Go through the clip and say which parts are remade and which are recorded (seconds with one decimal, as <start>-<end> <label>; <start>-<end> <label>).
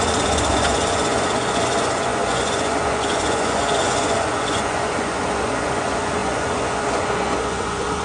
0.0-8.0 remade